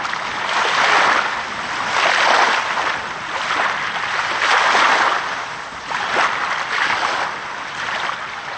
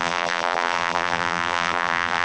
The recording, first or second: first